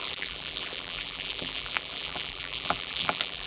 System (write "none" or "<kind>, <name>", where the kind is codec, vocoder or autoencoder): vocoder, BigVGAN v2